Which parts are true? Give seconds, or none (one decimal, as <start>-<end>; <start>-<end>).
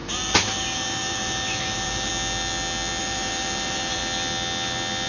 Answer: 2.1-3.0; 4.0-5.1